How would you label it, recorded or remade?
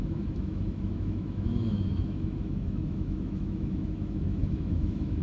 remade